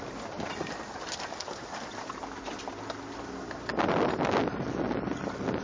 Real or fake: real